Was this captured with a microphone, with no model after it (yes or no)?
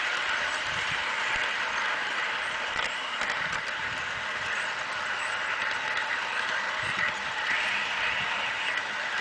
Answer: yes